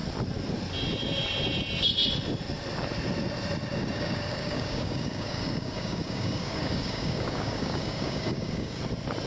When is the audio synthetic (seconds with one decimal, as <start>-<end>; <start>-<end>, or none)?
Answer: 3.7-8.8